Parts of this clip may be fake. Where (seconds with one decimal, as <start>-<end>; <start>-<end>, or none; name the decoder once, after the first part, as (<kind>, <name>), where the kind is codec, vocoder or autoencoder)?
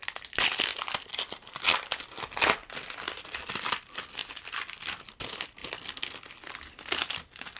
none